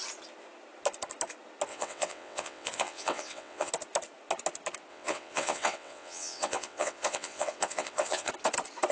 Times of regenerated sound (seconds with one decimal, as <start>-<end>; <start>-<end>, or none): 1.7-3.7; 4.9-8.3